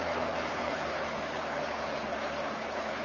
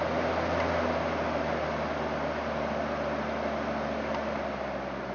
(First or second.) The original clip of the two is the second